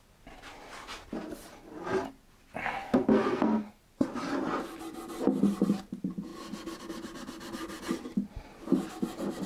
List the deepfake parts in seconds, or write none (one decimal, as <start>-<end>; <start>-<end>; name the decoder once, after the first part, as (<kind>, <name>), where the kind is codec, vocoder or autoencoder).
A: 2.6-3.8 (codec, SNAC)

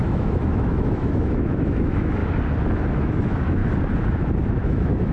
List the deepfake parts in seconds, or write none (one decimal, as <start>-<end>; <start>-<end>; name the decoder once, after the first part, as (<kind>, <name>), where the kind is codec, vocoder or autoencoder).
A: 0.0-2.2 (autoencoder, DAC-VAE); 2.9-3.6; 4.5-5.1